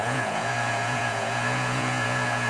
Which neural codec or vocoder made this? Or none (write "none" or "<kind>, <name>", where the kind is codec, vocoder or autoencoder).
vocoder, Vocos